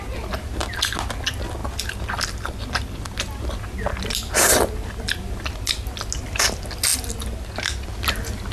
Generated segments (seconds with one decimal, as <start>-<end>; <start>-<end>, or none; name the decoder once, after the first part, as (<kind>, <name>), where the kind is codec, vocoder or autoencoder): none

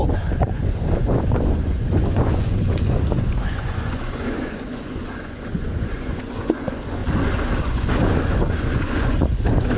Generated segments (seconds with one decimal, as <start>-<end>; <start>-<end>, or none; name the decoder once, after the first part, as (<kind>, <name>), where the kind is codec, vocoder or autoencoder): 0.0-7.0 (vocoder, Vocos); 7.6-9.8

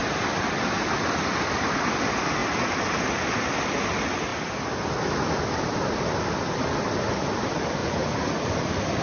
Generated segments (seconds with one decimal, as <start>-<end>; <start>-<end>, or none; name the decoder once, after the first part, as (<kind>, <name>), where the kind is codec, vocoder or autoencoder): 7.8-8.5 (vocoder, Vocos)

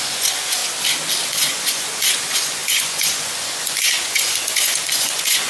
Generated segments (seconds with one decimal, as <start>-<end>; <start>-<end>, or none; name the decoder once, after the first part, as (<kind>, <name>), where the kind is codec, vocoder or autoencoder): 0.0-0.6 (vocoder, Vocos); 1.3-5.5